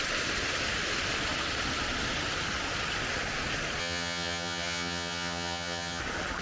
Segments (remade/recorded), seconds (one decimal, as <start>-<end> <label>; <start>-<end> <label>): 0.0-3.8 recorded; 3.8-6.0 remade; 6.0-6.4 recorded